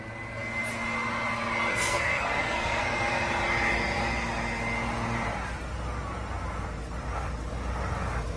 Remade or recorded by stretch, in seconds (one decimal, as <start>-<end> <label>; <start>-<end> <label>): 0.0-1.7 recorded; 1.7-3.2 remade; 3.2-8.4 recorded